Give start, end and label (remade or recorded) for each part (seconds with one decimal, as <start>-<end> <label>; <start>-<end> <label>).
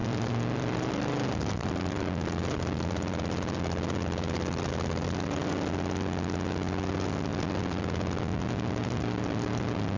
0.0-4.7 remade; 4.7-7.3 recorded; 7.3-8.4 remade; 8.4-8.8 recorded; 8.8-10.0 remade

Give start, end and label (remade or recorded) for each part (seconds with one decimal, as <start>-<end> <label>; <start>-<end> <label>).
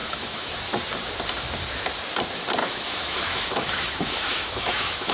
0.0-0.5 remade; 0.5-2.6 recorded; 2.6-5.1 remade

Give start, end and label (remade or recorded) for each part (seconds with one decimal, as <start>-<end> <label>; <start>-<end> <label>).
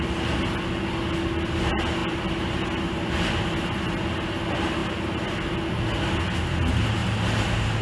0.0-7.8 recorded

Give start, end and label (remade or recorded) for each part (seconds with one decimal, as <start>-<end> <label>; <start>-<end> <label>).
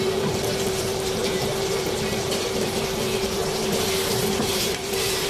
0.0-3.4 remade; 3.4-4.4 recorded; 4.4-5.3 remade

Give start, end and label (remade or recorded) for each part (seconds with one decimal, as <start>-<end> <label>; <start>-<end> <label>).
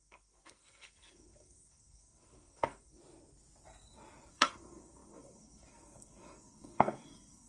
0.0-3.0 remade; 3.0-4.3 recorded; 4.3-7.5 remade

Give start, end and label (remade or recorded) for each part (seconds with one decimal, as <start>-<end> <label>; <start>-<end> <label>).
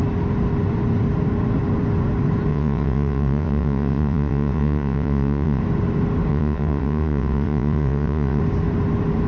0.0-2.5 recorded; 2.5-5.6 remade; 5.6-6.3 recorded; 6.3-8.4 remade; 8.4-9.3 recorded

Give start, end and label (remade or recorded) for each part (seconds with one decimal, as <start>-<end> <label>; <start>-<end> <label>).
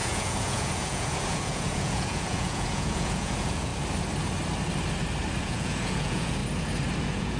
0.0-3.7 remade; 3.7-5.4 recorded; 5.4-6.4 remade; 6.4-7.0 recorded; 7.0-7.4 remade